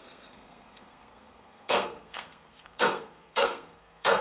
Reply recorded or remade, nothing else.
remade